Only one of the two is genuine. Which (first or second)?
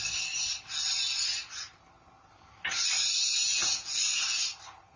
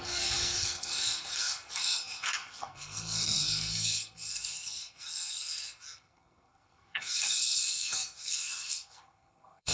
first